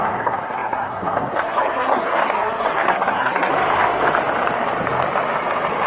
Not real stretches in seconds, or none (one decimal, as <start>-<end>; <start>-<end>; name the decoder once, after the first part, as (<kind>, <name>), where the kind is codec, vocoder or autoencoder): 0.0-3.5 (codec, SNAC)

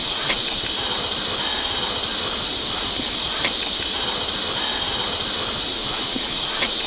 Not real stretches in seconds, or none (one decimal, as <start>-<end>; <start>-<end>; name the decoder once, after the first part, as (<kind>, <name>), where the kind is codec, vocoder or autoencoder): 0.0-0.6 (vocoder, Vocos); 5.7-6.9